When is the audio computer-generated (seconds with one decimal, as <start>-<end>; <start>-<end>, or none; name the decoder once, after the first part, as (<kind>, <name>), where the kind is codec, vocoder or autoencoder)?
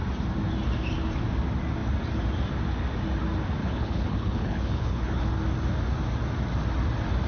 3.6-5.3 (codec, HILCodec)